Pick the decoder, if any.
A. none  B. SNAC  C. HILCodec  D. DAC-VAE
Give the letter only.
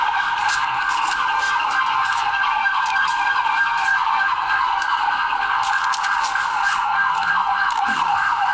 B